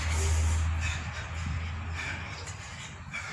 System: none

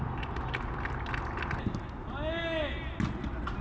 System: none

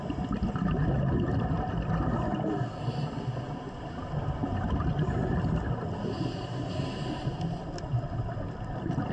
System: none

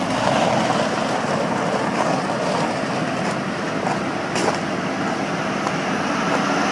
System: none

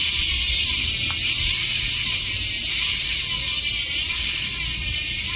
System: none